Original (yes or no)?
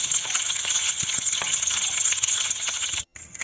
no